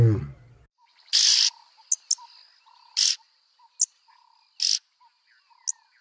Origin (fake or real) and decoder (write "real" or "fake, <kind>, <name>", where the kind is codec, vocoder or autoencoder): real